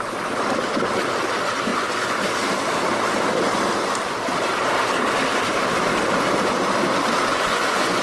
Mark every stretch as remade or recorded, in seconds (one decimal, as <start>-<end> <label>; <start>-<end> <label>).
0.0-1.7 recorded; 1.7-2.2 remade; 2.2-7.3 recorded; 7.3-8.0 remade